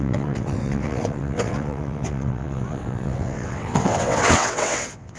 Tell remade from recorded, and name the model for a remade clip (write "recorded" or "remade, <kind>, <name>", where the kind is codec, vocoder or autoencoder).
remade, vocoder, WaveNeXt